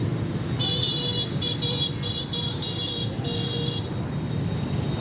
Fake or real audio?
real